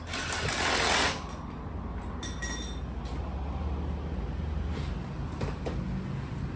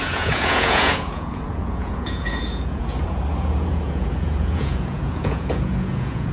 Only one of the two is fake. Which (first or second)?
second